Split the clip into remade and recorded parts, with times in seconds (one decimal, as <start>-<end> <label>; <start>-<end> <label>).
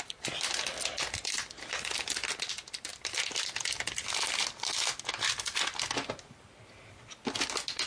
0.0-7.9 recorded